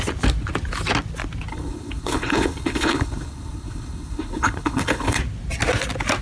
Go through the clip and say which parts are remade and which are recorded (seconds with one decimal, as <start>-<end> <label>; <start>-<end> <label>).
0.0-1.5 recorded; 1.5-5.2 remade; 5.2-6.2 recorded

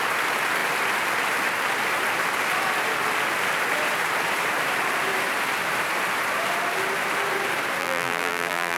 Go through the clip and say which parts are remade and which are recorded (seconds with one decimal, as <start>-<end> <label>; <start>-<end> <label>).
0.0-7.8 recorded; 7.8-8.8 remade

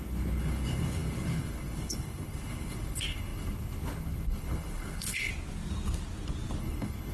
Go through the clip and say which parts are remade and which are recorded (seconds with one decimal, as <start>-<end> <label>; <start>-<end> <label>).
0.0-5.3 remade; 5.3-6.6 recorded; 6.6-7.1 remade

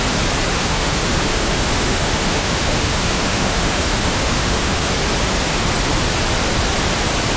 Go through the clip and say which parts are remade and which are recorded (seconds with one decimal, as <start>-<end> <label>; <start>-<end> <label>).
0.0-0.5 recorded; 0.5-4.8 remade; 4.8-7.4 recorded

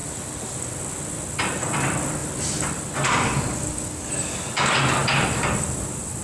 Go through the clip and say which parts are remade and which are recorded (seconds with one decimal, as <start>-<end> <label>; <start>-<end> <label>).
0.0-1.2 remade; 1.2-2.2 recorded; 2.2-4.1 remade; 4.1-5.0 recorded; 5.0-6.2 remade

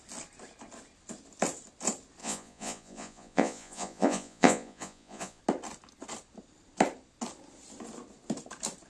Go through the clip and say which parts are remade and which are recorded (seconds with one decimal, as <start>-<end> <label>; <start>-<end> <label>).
0.0-2.2 recorded; 2.2-5.4 remade; 5.4-8.9 recorded

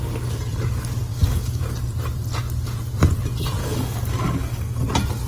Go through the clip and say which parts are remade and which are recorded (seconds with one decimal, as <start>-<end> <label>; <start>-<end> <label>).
0.0-1.1 recorded; 1.1-1.6 remade; 1.6-3.6 recorded; 3.6-4.8 remade; 4.8-5.3 recorded